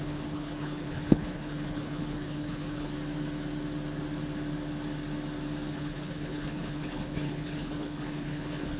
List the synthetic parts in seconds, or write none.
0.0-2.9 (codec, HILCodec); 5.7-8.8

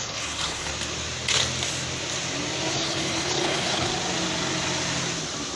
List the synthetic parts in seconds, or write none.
0.0-0.7 (codec, HILCodec); 2.7-3.9

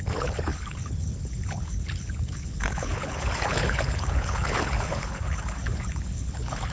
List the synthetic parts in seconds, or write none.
0.0-6.7 (codec, HILCodec)

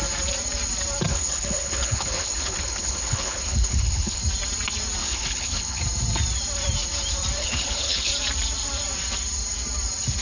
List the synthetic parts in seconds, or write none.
1.1-4.2 (codec, HILCodec); 5.0-5.8; 7.4-8.1